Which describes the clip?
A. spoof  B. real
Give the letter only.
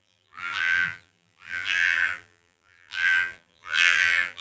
A